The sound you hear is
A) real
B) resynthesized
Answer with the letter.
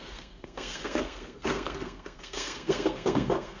B